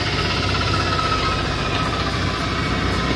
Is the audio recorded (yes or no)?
yes